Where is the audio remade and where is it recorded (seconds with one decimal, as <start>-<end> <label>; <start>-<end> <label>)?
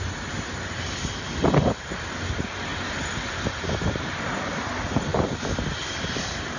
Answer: 0.0-6.6 recorded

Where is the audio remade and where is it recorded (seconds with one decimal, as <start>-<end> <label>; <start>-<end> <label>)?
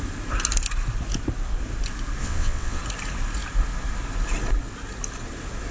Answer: 0.0-2.2 recorded; 2.2-2.8 remade; 2.8-5.7 recorded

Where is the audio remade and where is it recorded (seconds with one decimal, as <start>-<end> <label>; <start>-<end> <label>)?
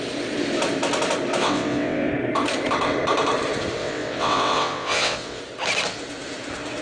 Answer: 0.0-1.4 recorded; 1.4-2.1 remade; 2.1-3.8 recorded; 3.8-5.4 remade; 5.4-6.8 recorded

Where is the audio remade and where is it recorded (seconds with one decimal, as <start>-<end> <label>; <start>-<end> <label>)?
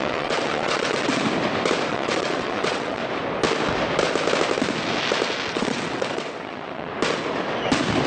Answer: 0.0-1.2 remade; 1.2-1.9 recorded; 1.9-3.0 remade; 3.0-5.5 recorded; 5.5-6.9 remade; 6.9-8.1 recorded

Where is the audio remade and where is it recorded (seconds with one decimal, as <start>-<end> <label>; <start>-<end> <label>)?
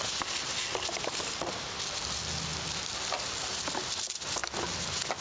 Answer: 0.0-5.2 recorded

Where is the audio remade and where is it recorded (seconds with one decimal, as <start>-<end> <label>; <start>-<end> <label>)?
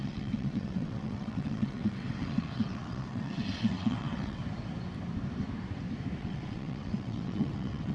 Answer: 0.0-4.4 remade; 4.4-6.2 recorded; 6.2-7.9 remade